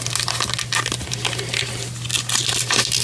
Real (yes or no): yes